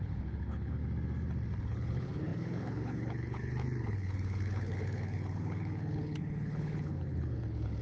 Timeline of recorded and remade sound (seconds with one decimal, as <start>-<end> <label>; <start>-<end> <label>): 0.0-0.8 remade; 0.8-1.6 recorded; 1.6-7.8 remade